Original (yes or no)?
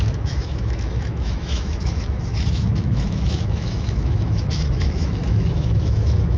no